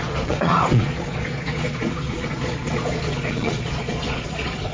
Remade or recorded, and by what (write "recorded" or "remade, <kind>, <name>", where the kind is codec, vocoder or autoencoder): remade, vocoder, Vocos